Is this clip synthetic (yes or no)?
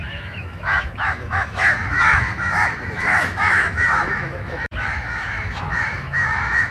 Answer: yes